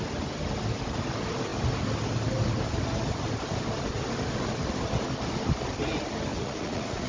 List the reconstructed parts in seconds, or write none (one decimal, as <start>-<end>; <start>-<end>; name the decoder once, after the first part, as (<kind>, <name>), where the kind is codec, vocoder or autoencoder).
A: 6.3-7.1 (vocoder, Vocos)

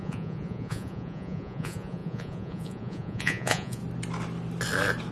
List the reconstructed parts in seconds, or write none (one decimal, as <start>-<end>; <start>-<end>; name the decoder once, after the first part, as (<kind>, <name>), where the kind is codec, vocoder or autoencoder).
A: 0.0-3.8 (vocoder, Vocos)